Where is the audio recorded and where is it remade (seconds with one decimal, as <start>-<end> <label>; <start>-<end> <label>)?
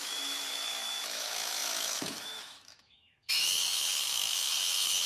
0.0-5.1 remade